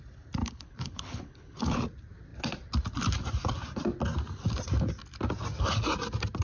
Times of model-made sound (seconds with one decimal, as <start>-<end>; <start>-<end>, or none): 0.4-1.8